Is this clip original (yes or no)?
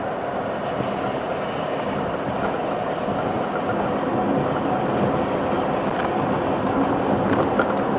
yes